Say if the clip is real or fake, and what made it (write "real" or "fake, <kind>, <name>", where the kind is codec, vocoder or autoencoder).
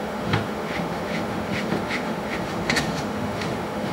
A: fake, autoencoder, DAC-VAE